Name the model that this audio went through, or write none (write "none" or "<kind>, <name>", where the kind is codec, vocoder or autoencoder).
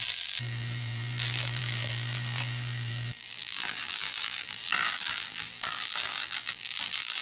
vocoder, BigVGAN v2